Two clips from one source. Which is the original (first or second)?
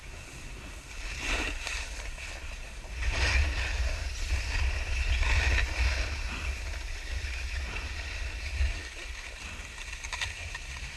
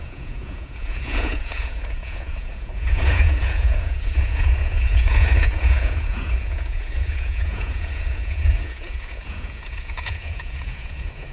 first